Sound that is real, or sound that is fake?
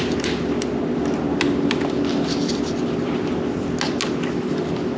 real